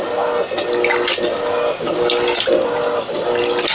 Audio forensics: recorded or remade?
recorded